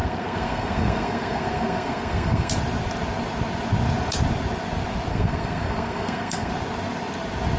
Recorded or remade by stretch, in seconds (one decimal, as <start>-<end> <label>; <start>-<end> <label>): 0.0-2.5 remade; 2.5-5.1 recorded; 5.1-6.5 remade; 6.5-7.6 recorded